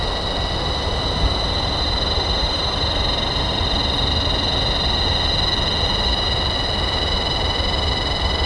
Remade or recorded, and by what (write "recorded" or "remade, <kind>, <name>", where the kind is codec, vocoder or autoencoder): recorded